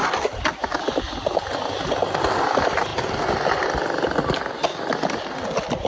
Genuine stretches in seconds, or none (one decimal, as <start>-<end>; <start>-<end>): 0.0-5.9